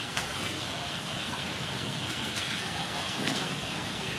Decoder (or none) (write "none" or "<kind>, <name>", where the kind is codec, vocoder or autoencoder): codec, SNAC